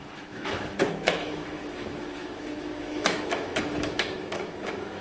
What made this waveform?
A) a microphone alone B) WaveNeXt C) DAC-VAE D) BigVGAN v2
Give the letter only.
C